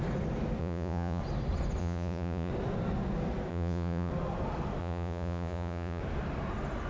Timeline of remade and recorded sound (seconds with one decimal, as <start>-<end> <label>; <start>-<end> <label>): 0.0-0.6 recorded; 0.6-1.2 remade; 1.2-1.8 recorded; 1.8-2.5 remade; 2.5-3.5 recorded; 3.5-4.1 remade; 4.1-4.8 recorded; 4.8-6.0 remade; 6.0-6.9 recorded